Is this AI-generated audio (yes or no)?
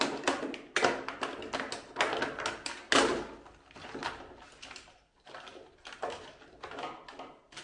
no